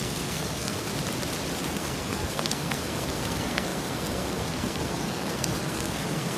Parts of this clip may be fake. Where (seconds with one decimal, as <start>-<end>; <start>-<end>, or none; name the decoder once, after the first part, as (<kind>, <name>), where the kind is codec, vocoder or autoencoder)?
0.0-0.9 (codec, SNAC); 1.6-6.4